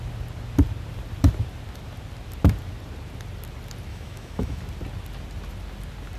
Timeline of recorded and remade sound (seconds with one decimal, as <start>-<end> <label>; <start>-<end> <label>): 0.0-3.9 recorded; 3.9-4.6 remade; 4.6-6.2 recorded